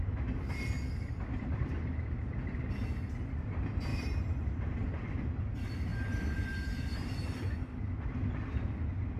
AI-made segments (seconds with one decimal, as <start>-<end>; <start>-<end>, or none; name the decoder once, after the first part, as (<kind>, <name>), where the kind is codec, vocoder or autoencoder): 3.9-5.3 (vocoder, BigVGAN v2); 5.9-7.1